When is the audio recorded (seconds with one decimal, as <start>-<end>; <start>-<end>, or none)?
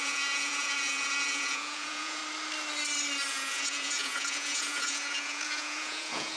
2.2-3.3